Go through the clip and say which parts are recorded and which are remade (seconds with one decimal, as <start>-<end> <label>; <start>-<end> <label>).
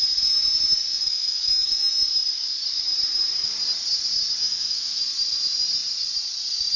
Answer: 0.0-0.9 recorded; 0.9-1.9 remade; 1.9-4.4 recorded; 4.4-5.0 remade; 5.0-6.8 recorded